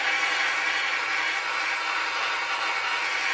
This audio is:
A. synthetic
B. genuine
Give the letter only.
B